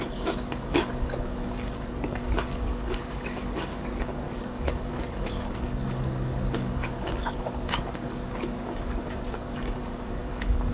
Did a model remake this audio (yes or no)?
yes